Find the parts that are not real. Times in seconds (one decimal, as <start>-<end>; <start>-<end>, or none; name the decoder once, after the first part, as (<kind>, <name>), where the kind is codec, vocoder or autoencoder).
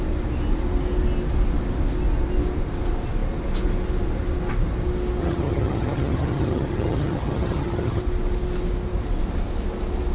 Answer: 5.2-8.0 (vocoder, HiFi-GAN)